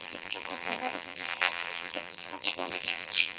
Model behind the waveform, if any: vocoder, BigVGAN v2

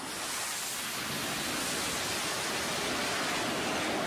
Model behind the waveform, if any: none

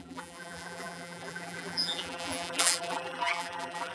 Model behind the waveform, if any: vocoder, BigVGAN v2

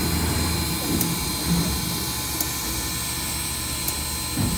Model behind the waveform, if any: none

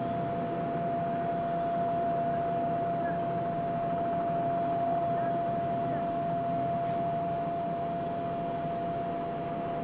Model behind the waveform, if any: none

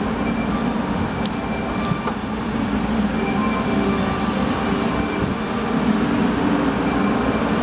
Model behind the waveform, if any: none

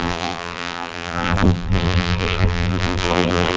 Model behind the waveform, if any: vocoder, BigVGAN v2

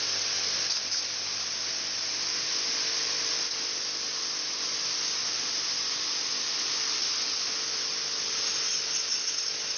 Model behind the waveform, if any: none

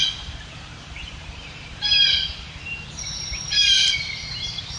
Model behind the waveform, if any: vocoder, BigVGAN v2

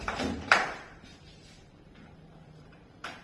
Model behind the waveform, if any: vocoder, BigVGAN v2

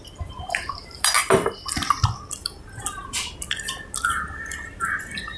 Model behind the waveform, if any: none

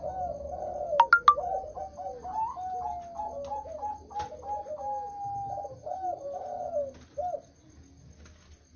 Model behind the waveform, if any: none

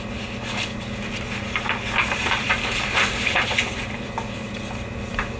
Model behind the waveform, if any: vocoder, BigVGAN v2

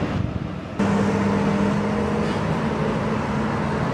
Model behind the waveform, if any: none